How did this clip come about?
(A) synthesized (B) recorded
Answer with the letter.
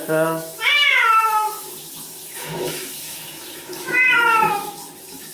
A